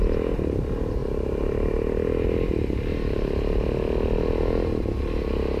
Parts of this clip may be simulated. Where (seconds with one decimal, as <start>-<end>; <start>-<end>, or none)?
none